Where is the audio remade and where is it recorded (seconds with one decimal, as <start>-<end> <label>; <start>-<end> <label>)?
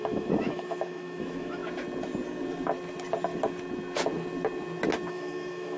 0.0-1.6 remade; 1.6-5.1 recorded; 5.1-5.8 remade